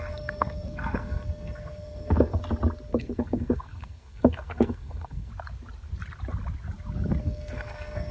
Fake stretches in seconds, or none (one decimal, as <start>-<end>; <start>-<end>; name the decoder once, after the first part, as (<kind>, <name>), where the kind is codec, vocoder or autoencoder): 0.0-2.4 (codec, SNAC); 2.9-5.3; 7.2-8.1